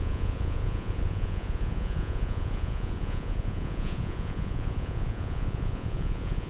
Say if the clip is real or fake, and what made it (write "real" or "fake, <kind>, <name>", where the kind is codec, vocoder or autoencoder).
fake, vocoder, Vocos